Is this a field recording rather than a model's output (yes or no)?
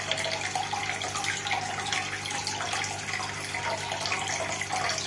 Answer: yes